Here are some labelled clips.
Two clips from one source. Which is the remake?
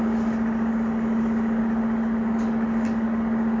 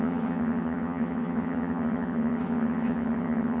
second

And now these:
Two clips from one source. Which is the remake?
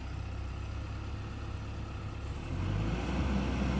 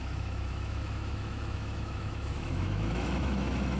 second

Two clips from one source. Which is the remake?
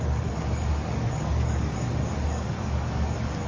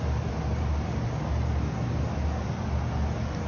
first